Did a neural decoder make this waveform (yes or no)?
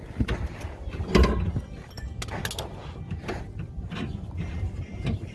no